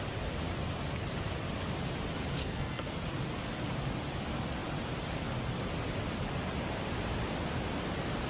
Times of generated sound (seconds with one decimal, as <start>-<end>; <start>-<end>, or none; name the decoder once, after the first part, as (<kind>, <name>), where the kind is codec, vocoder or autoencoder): 2.4-2.9 (codec, SNAC)